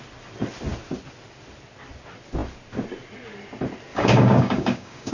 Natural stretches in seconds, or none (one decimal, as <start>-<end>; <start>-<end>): 0.0-3.9